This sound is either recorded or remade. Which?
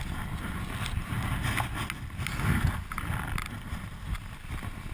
recorded